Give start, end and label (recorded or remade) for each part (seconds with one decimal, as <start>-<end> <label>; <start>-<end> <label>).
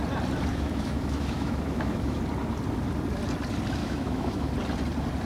0.0-0.5 recorded; 0.5-2.2 remade; 2.2-3.8 recorded; 3.8-4.5 remade; 4.5-5.3 recorded